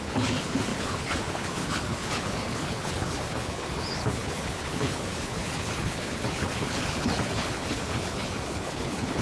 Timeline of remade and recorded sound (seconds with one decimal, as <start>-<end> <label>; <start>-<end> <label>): 0.0-9.2 remade